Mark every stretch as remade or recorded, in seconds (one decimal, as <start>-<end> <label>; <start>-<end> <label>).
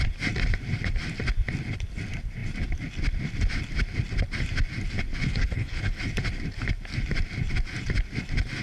0.0-5.2 recorded; 5.2-6.0 remade; 6.0-8.6 recorded